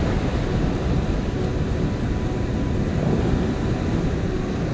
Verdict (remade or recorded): recorded